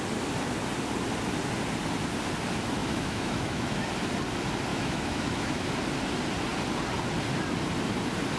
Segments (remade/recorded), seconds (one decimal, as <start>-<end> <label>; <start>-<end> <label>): 0.0-2.8 recorded; 2.8-3.8 remade; 3.8-4.7 recorded; 4.7-5.7 remade; 5.7-8.4 recorded